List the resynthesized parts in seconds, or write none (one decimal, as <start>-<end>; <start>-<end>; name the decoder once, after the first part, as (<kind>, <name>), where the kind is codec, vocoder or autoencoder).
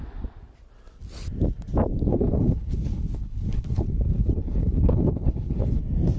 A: 2.1-5.8 (codec, HILCodec)